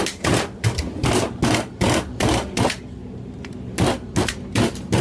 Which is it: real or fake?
real